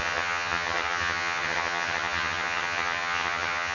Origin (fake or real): fake